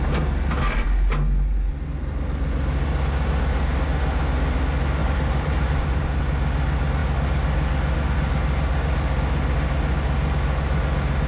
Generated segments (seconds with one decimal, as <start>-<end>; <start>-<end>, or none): 5.0-6.2